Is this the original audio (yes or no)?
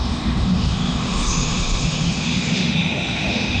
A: no